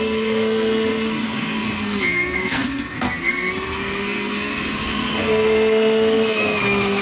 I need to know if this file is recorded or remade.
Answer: remade